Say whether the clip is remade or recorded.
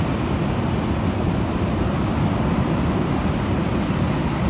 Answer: recorded